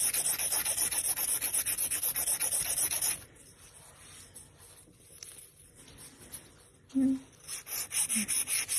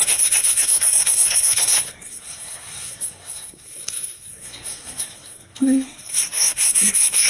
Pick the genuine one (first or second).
first